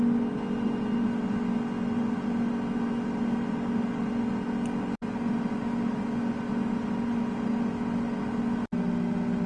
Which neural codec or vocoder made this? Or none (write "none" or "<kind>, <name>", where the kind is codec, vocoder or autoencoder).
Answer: none